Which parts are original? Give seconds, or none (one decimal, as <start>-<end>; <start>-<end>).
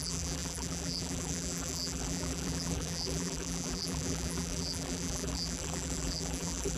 none